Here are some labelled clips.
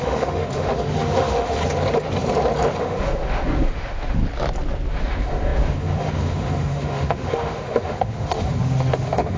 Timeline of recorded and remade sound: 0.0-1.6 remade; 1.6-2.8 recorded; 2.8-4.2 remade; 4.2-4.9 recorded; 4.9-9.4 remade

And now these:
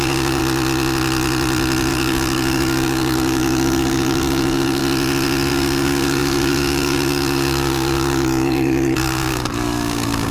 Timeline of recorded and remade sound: 0.0-0.4 remade; 0.4-1.9 recorded; 1.9-4.8 remade; 4.8-5.5 recorded; 5.5-10.3 remade

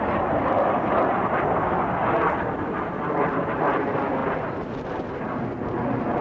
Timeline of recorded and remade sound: 0.0-6.2 recorded